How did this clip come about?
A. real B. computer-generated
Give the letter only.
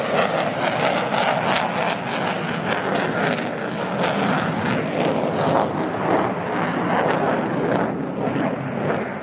A